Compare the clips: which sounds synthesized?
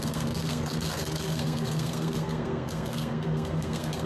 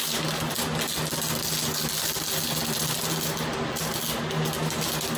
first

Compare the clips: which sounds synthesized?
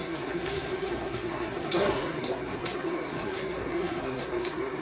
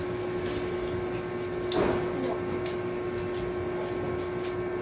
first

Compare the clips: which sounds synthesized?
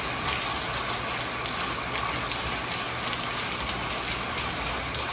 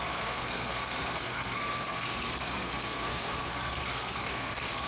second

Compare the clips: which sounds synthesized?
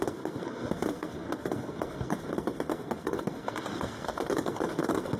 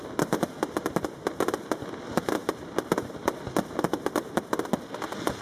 first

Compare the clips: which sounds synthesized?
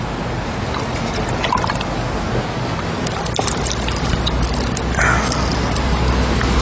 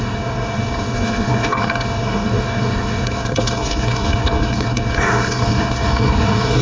second